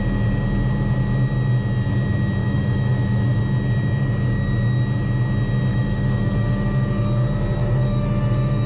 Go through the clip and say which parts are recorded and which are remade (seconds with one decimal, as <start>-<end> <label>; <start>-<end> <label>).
0.0-2.4 recorded; 2.4-3.4 remade; 3.4-5.7 recorded; 5.7-6.9 remade; 6.9-7.6 recorded; 7.6-8.7 remade